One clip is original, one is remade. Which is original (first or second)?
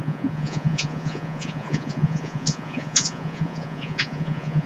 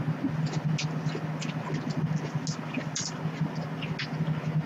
second